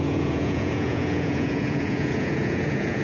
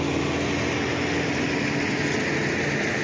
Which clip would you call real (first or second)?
second